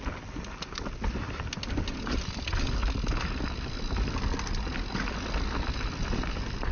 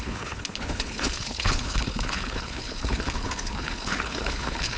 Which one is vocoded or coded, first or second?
second